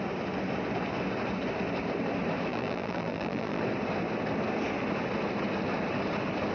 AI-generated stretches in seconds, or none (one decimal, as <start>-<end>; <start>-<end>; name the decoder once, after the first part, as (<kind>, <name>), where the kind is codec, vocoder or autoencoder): 2.5-3.6 (vocoder, BigVGAN v2)